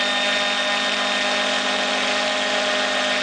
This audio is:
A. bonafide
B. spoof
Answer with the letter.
A